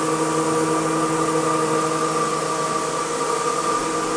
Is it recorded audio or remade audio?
recorded